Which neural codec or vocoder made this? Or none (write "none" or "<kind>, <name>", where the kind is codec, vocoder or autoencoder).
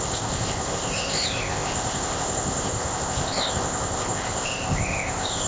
codec, ZipCodec